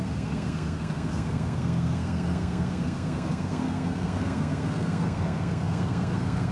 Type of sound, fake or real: fake